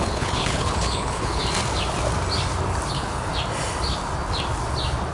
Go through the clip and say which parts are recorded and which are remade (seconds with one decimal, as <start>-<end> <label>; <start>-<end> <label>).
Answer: 0.0-1.4 remade; 1.4-2.9 recorded; 2.9-3.3 remade; 3.3-5.1 recorded